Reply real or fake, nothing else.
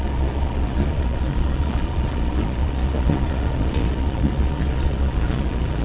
fake